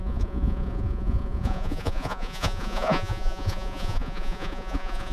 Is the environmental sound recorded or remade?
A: remade